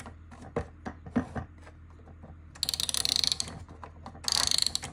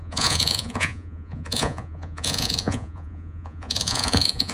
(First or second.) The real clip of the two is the first